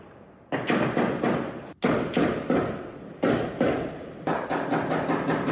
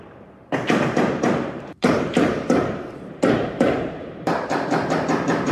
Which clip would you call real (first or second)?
first